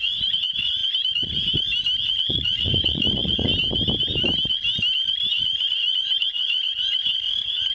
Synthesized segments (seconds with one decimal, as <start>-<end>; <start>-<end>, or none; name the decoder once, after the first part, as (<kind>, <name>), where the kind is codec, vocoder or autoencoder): 0.0-0.8 (vocoder, Vocos); 2.1-3.5; 5.3-7.7